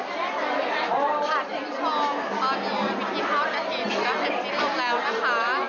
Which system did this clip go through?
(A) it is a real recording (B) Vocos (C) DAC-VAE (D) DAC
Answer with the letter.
A